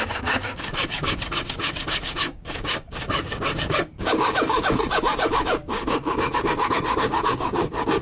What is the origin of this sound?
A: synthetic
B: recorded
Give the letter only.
A